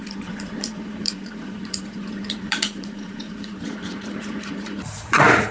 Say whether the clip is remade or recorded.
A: remade